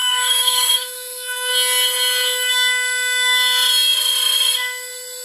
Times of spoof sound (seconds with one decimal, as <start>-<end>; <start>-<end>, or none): 0.0-1.5